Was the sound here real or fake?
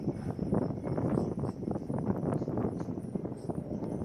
real